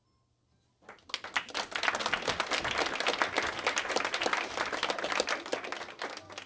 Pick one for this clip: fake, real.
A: real